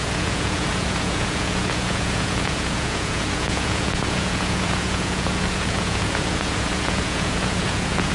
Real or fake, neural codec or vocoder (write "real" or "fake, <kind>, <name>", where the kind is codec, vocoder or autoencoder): fake, vocoder, Vocos